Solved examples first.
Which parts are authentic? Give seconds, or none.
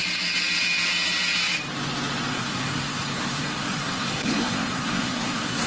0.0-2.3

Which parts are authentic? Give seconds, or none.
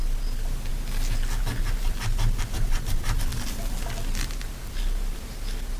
0.0-5.8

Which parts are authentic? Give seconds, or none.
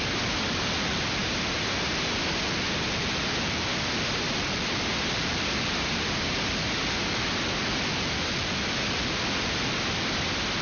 0.0-10.6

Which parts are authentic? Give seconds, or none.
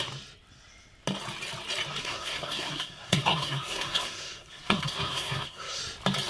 0.0-2.0; 5.8-6.3